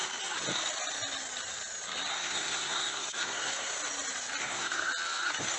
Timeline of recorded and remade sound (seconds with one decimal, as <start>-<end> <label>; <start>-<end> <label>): 0.0-2.1 recorded; 2.1-3.7 remade; 3.7-4.4 recorded; 4.4-4.9 remade; 4.9-5.6 recorded